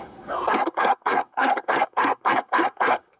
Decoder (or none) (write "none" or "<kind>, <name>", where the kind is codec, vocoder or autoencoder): codec, SNAC